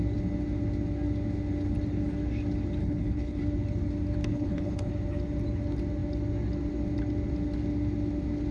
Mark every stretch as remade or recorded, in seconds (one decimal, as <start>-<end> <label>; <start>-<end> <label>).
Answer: 0.0-2.8 recorded; 2.8-3.4 remade; 3.4-4.3 recorded; 4.3-4.9 remade; 4.9-8.5 recorded